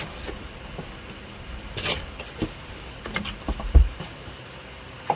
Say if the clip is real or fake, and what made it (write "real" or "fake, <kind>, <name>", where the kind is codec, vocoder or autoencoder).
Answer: real